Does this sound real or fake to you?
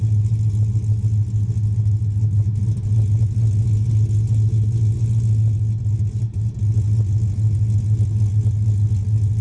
real